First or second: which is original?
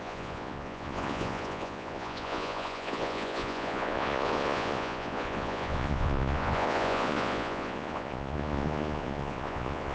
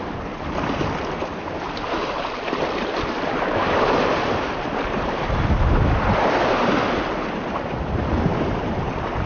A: second